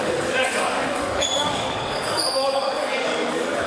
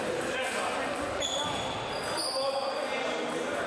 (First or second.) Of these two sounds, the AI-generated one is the first